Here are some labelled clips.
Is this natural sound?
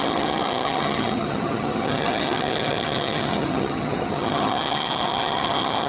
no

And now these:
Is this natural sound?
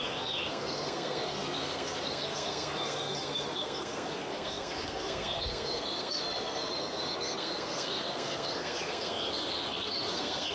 no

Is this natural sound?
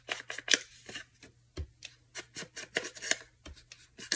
yes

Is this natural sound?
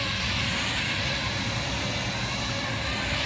yes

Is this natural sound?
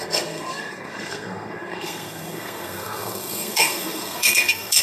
no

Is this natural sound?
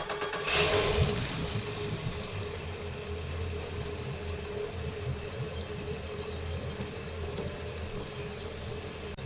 yes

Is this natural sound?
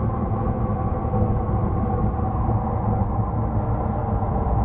yes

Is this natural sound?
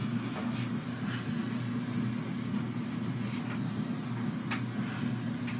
yes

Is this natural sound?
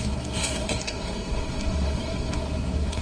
no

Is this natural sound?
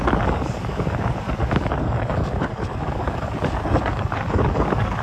no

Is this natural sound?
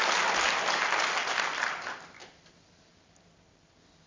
yes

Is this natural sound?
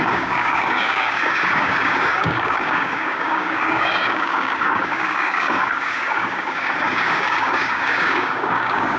no